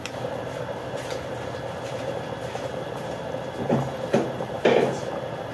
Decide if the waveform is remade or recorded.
recorded